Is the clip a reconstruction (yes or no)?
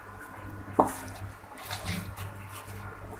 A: no